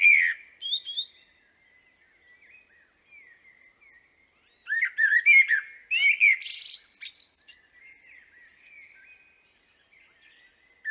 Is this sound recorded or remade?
recorded